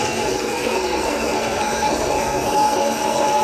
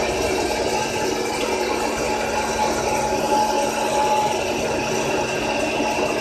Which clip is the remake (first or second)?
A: first